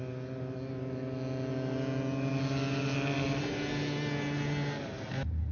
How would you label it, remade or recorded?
recorded